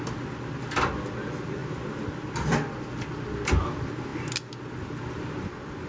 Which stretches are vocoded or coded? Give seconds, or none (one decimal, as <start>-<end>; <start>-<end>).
none